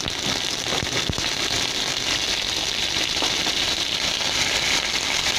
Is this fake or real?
real